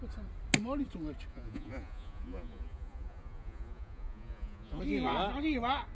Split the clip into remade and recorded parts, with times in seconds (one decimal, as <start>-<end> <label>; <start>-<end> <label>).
0.0-1.3 recorded; 1.3-4.8 remade; 4.8-5.9 recorded